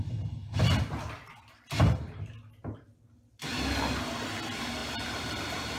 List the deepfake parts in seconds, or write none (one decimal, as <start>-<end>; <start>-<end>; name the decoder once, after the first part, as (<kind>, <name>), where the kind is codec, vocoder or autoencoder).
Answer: 4.8-5.8 (vocoder, BigVGAN v2)